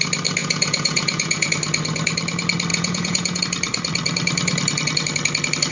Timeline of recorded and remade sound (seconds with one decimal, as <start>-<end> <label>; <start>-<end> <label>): 0.0-0.4 recorded; 0.4-1.5 remade; 1.5-2.7 recorded; 2.7-3.4 remade; 3.4-5.7 recorded